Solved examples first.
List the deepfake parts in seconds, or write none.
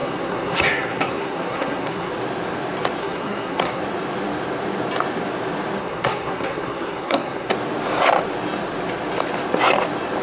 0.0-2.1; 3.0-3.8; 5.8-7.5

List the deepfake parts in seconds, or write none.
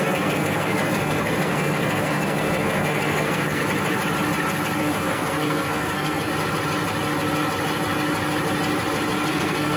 0.0-3.6; 4.8-6.3; 9.3-9.8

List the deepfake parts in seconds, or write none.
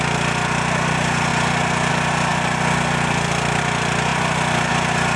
none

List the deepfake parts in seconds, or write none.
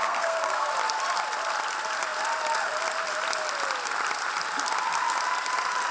0.0-0.7